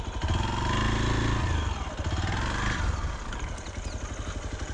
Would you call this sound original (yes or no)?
yes